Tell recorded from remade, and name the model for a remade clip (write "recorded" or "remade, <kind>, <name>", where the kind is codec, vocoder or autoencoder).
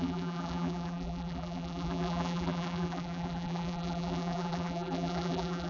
remade, vocoder, BigVGAN v2